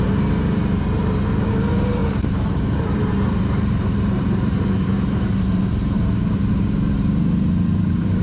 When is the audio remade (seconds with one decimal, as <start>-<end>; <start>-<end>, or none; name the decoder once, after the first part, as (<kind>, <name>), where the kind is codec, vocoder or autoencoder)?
0.0-8.2 (vocoder, BigVGAN v2)